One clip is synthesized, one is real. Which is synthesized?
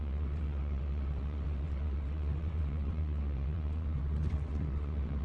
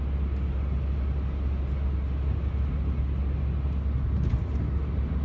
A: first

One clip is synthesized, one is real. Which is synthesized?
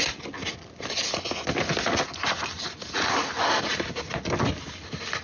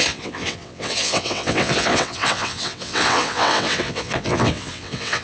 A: second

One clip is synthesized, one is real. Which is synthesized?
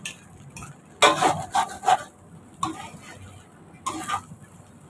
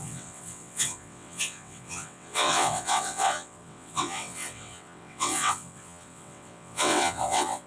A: second